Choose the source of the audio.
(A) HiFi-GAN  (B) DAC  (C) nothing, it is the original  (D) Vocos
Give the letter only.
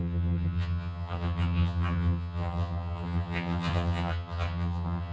A